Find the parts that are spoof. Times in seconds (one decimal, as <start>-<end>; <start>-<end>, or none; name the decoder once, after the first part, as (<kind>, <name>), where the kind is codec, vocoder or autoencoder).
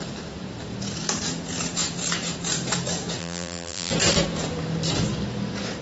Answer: 3.2-3.9 (vocoder, BigVGAN v2)